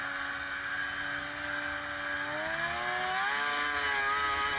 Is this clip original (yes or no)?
yes